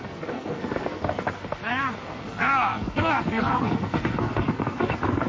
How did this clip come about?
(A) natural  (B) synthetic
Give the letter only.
B